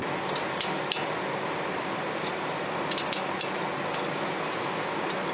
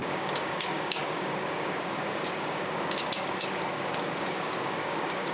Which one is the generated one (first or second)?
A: second